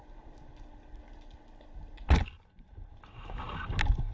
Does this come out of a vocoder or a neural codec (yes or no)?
no